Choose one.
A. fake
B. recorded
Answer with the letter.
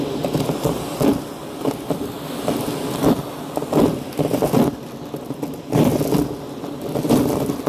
B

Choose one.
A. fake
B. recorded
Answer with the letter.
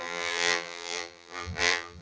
A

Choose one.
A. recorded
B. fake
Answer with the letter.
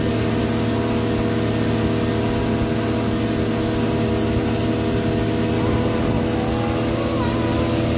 A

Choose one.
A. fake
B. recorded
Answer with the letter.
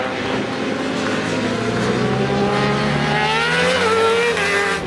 B